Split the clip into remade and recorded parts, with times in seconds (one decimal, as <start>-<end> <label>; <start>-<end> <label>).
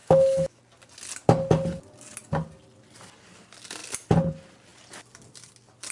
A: 0.0-0.6 remade; 0.6-5.9 recorded